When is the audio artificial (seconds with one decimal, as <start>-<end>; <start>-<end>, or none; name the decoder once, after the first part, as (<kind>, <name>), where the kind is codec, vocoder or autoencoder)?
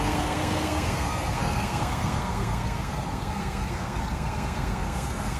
0.0-5.4 (codec, SNAC)